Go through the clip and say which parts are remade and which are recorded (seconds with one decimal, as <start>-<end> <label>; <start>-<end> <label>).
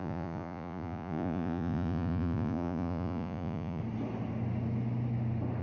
0.0-3.8 remade; 3.8-5.6 recorded